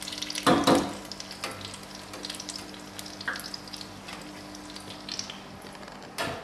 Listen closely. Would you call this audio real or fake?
real